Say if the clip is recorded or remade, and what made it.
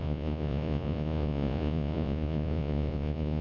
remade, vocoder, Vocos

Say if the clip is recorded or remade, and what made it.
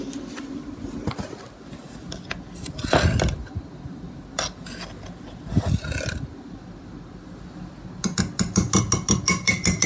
recorded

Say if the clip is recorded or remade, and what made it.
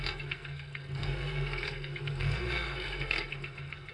remade, codec, SNAC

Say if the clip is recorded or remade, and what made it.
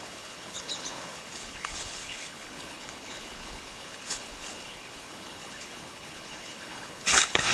remade, codec, HILCodec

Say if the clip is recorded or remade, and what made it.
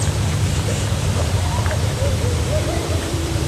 remade, vocoder, BigVGAN v2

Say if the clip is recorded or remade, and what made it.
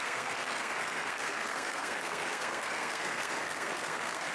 remade, codec, SNAC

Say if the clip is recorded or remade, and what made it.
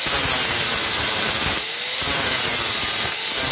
recorded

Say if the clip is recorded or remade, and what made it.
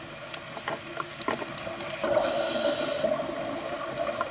recorded